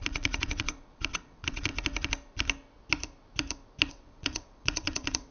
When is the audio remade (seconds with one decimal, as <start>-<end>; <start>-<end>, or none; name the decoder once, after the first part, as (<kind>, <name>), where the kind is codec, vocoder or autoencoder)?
0.0-1.7 (vocoder, WaveNeXt); 3.9-5.3